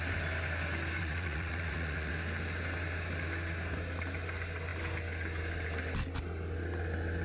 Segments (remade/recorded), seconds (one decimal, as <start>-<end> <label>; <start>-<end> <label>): 0.0-1.0 recorded; 1.0-2.1 remade; 2.1-7.2 recorded